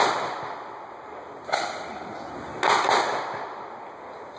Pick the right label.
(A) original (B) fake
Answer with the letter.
A